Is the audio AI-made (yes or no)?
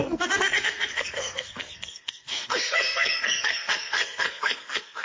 yes